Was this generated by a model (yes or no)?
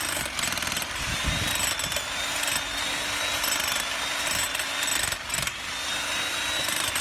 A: no